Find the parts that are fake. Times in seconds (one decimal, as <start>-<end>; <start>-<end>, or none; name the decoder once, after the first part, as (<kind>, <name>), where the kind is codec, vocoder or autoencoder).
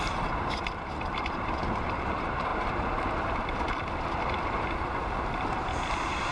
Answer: 0.0-2.5 (vocoder, BigVGAN v2)